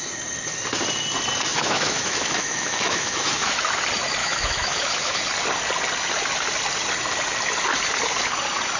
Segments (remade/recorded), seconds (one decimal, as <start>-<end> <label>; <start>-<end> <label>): 0.0-1.5 recorded; 1.5-3.6 remade; 3.6-4.2 recorded; 4.2-5.2 remade; 5.2-8.8 recorded